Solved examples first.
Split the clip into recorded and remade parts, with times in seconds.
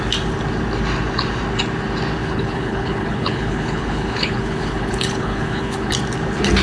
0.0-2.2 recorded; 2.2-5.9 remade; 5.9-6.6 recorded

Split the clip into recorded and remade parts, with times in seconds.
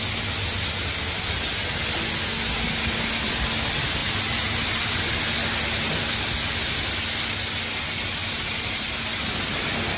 0.0-4.0 recorded; 4.0-5.2 remade; 5.2-8.2 recorded; 8.2-9.2 remade; 9.2-10.0 recorded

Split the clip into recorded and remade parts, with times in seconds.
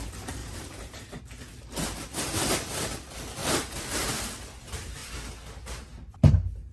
0.0-0.4 recorded; 0.4-1.2 remade; 1.2-3.4 recorded; 3.4-4.1 remade; 4.1-6.7 recorded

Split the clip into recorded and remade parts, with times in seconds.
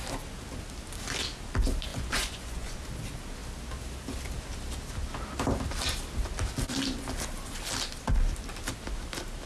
0.0-1.9 recorded; 1.9-2.8 remade; 2.8-9.5 recorded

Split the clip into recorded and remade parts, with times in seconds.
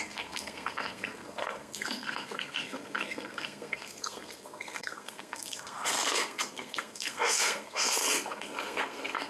0.0-9.3 remade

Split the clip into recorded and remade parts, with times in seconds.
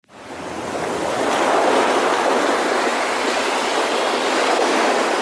0.0-5.2 recorded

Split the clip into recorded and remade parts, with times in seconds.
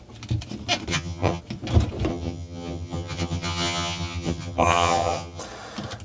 0.0-0.9 recorded; 0.9-1.4 remade; 1.4-2.1 recorded; 2.1-5.4 remade; 5.4-6.0 recorded